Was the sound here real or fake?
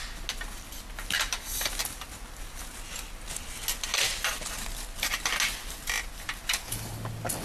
real